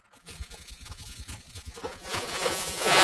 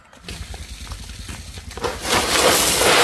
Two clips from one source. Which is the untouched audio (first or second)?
second